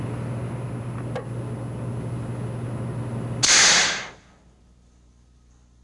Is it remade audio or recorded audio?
recorded